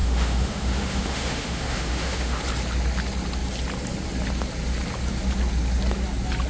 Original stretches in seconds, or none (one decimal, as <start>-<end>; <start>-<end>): 2.4-6.5